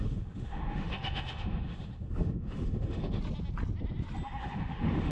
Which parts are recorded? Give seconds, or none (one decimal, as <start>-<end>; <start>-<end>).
3.2-4.4